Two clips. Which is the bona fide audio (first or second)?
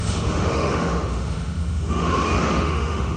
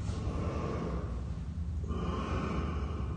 second